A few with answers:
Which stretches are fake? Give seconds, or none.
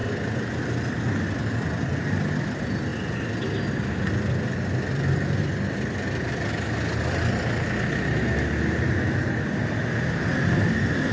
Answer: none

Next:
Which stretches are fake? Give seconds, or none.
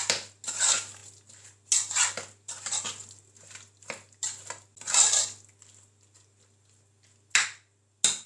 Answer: none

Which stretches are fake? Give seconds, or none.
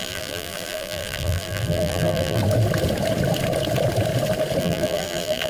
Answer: 0.0-2.4 (vocoder, BigVGAN v2); 4.6-5.5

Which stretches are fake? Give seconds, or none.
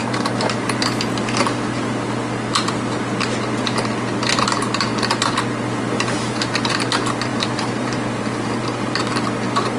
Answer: 7.3-8.6 (vocoder, BigVGAN v2)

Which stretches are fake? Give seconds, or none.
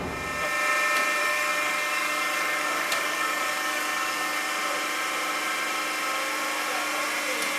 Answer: 1.2-4.5 (codec, DAC)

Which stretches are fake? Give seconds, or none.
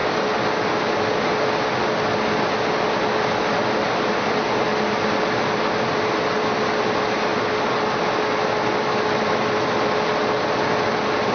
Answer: none